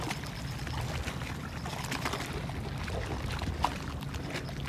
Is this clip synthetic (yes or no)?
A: no